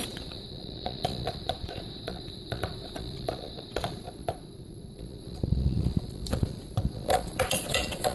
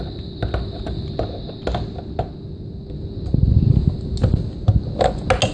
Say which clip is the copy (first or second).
first